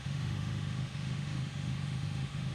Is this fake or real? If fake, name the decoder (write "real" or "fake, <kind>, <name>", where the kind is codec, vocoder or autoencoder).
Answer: fake, autoencoder, DAC-VAE